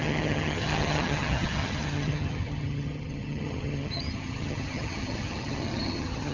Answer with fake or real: fake